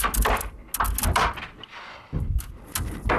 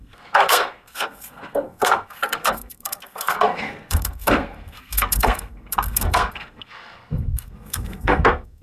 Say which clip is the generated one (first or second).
second